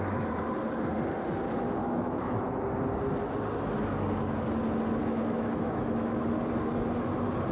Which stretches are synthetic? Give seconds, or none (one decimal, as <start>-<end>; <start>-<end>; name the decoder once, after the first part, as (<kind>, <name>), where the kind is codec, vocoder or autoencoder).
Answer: 1.8-2.4 (autoencoder, DAC-VAE); 5.0-6.2